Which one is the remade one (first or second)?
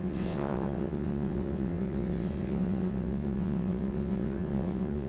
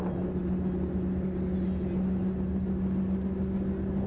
first